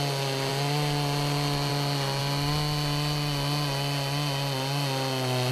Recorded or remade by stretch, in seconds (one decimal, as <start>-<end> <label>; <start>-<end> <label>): 0.0-5.5 recorded